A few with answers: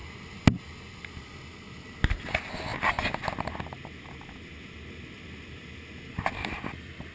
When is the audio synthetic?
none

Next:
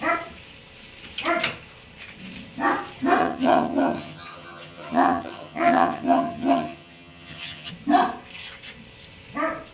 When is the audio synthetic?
3.2-7.7

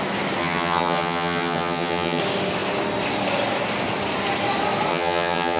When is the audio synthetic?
0.4-2.2; 4.9-5.6

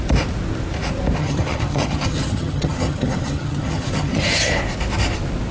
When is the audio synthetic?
1.2-4.5

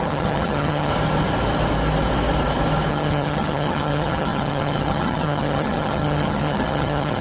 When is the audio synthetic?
0.0-0.9; 2.9-7.2

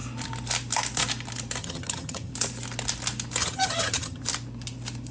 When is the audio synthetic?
1.6-2.3; 3.4-4.2

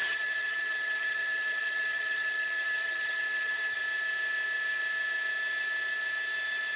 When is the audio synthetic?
0.0-3.8